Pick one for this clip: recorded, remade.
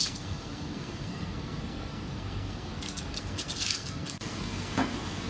remade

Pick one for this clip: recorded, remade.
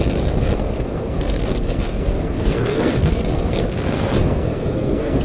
remade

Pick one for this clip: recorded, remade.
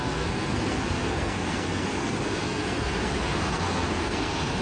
remade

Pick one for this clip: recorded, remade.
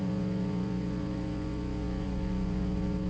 remade